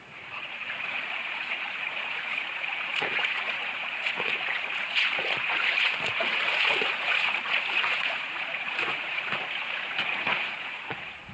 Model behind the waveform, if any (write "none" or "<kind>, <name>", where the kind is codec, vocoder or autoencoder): vocoder, Vocos